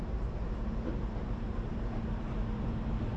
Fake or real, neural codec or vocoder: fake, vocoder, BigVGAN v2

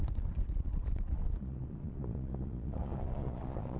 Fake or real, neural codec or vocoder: fake, vocoder, Vocos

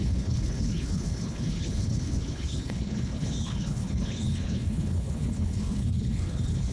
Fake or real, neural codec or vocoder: fake, codec, HILCodec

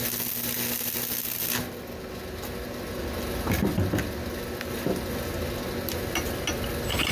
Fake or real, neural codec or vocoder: real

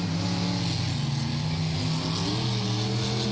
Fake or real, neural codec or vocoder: real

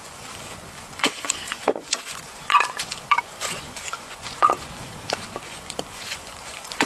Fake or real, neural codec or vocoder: fake, vocoder, Vocos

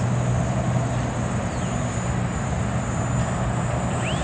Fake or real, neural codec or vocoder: real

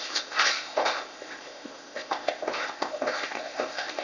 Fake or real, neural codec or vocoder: fake, codec, ZipCodec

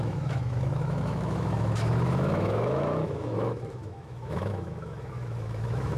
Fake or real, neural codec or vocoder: fake, autoencoder, DAC-VAE